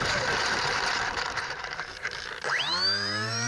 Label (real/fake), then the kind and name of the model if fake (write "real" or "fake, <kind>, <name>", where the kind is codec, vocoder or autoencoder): fake, vocoder, BigVGAN v2